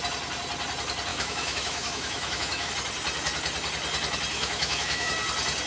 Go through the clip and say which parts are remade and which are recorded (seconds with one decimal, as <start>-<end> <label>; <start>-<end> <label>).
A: 0.0-1.1 recorded; 1.1-2.7 remade; 2.7-4.3 recorded; 4.3-5.1 remade; 5.1-5.7 recorded